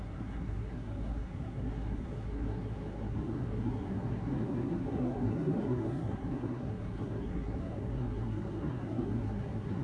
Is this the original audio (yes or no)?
no